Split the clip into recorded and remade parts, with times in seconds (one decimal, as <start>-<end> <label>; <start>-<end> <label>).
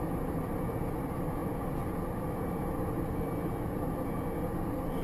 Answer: 0.0-5.0 recorded